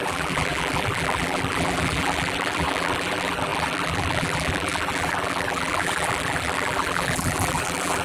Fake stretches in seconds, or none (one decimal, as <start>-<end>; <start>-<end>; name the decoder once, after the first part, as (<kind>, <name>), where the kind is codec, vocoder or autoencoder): 0.0-8.0 (vocoder, BigVGAN v2)